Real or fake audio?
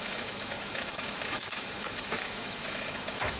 fake